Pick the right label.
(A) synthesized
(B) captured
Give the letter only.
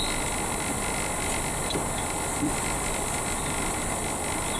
B